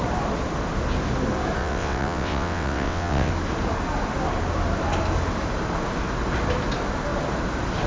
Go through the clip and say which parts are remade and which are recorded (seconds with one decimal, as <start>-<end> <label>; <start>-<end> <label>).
0.0-1.6 recorded; 1.6-3.3 remade; 3.3-7.9 recorded